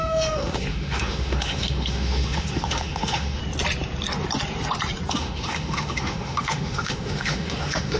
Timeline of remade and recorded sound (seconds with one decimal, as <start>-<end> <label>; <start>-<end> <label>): 0.0-3.4 remade; 3.4-5.1 recorded; 5.1-8.0 remade